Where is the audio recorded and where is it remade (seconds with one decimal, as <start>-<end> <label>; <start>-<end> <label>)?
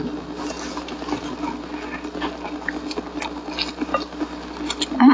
0.0-5.1 recorded